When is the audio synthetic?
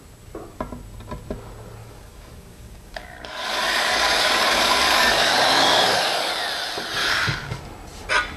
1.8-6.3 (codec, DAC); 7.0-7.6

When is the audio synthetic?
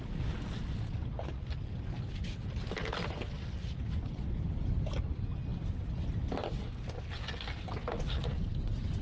none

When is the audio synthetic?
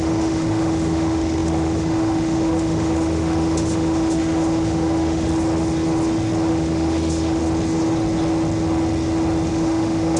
0.0-5.3 (autoencoder, DAC-VAE); 6.5-7.4; 9.5-10.2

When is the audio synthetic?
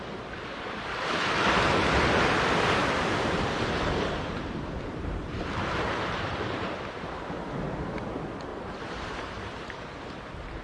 2.8-7.2 (vocoder, BigVGAN v2); 8.5-10.2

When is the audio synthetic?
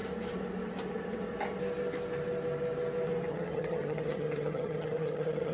3.3-5.5 (vocoder, HiFi-GAN)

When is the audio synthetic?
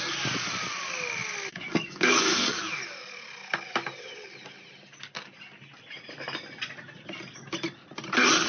1.5-2.6 (codec, DAC)